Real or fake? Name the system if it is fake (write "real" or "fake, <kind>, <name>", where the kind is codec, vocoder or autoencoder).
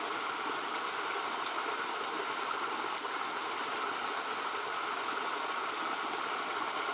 real